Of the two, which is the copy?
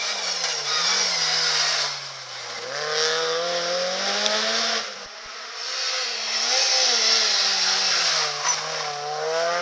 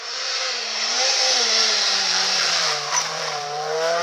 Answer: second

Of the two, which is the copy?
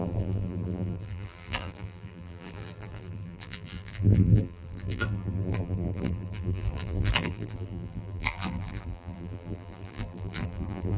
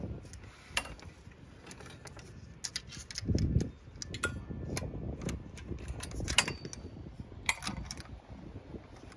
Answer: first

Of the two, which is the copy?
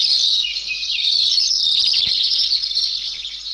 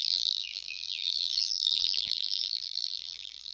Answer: second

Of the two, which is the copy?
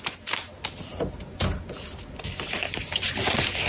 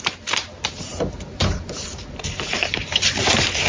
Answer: second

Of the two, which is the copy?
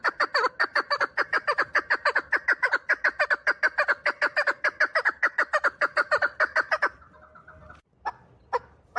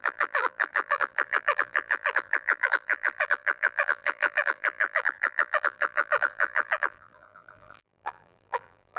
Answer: second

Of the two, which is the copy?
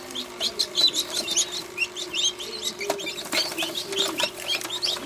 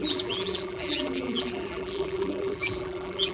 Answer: second